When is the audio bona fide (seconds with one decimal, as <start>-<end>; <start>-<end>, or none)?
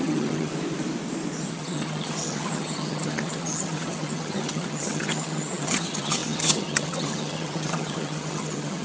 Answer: 0.5-1.5